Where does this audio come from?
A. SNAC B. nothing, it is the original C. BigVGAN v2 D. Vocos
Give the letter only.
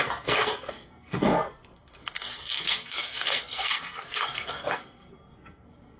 A